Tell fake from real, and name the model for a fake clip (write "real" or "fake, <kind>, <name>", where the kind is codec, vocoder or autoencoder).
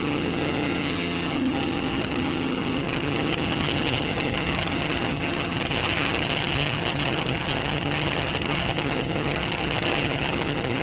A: fake, vocoder, HiFi-GAN